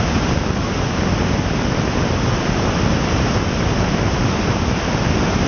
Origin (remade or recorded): recorded